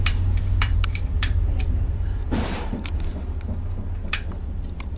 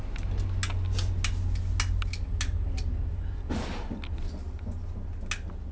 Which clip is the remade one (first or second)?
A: first